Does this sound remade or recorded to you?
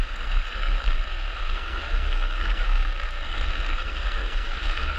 remade